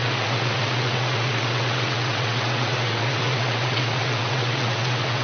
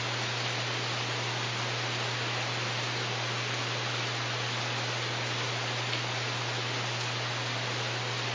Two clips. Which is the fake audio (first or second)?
first